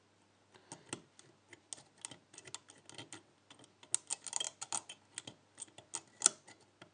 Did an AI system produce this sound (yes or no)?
no